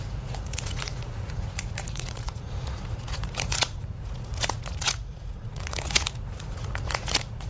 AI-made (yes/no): yes